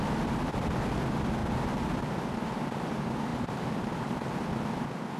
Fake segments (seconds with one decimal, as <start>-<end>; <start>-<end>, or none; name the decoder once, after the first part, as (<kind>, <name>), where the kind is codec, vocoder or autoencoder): 1.4-2.1 (vocoder, BigVGAN v2); 3.3-4.5